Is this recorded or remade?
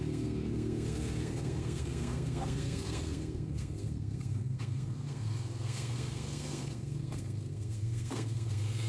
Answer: remade